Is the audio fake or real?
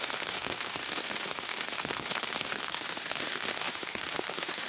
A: fake